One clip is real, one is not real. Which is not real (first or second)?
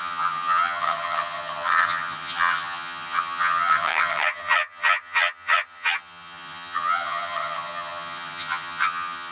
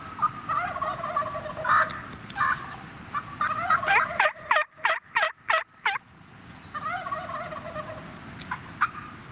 first